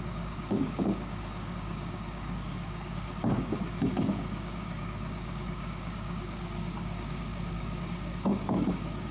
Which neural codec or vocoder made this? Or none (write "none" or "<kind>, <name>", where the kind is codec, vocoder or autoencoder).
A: codec, DAC